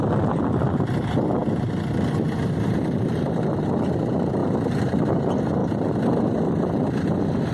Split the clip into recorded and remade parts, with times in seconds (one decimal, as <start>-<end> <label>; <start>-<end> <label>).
0.0-1.4 recorded; 1.4-3.6 remade; 3.6-4.4 recorded; 4.4-5.1 remade; 5.1-5.6 recorded; 5.6-7.1 remade; 7.1-7.5 recorded